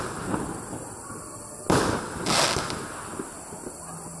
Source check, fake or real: real